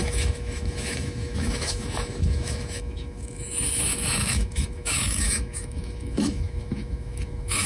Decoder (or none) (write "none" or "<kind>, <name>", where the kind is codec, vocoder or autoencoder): autoencoder, DAC-VAE